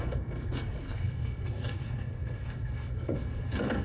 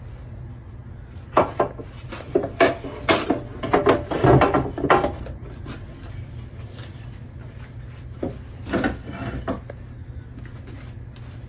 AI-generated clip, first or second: first